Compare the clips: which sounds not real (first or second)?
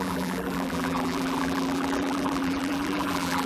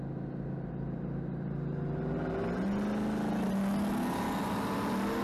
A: first